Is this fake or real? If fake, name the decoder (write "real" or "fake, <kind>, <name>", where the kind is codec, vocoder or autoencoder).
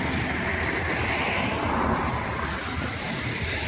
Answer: real